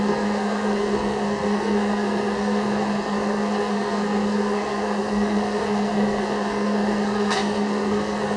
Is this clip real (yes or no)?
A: no